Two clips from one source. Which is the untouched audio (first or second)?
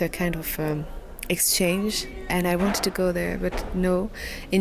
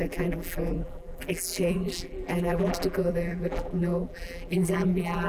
first